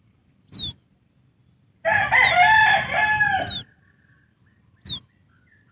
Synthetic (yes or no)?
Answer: no